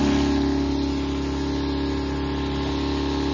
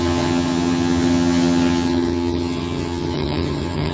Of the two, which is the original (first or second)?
first